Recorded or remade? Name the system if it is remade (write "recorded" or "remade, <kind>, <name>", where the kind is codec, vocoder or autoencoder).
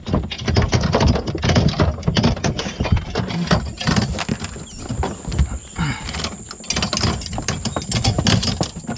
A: recorded